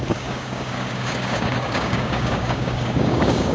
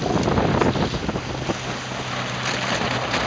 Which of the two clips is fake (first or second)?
first